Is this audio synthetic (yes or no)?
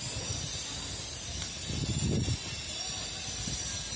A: no